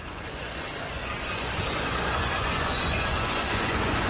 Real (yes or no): no